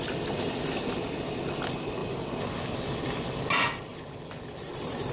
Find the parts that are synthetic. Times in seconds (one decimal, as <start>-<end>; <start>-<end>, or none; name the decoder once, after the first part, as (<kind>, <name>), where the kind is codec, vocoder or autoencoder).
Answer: none